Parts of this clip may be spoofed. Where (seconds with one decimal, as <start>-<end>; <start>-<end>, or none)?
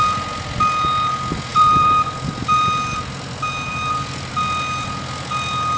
1.5-2.3; 3.7-4.3